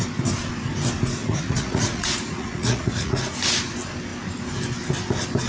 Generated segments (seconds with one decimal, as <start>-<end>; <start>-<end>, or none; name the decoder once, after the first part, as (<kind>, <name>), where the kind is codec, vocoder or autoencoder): 1.2-3.3 (vocoder, Vocos)